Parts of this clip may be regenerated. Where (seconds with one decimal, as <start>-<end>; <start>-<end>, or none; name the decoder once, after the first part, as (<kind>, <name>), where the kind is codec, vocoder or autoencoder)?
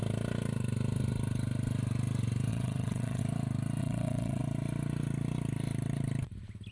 2.5-3.2 (vocoder, WaveNeXt); 3.8-4.4